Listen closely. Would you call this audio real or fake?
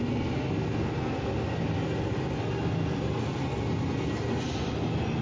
real